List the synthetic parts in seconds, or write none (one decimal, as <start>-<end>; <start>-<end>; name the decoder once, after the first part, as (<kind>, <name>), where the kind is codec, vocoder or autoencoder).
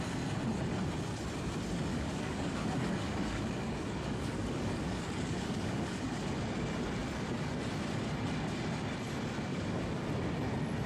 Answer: 1.9-6.2 (codec, DAC); 9.5-10.1